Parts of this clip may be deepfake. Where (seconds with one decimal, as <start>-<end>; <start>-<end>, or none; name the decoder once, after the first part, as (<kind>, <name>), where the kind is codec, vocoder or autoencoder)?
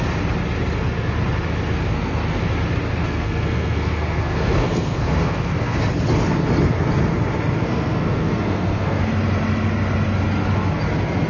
1.8-2.4 (codec, SNAC); 3.0-5.8; 7.6-9.0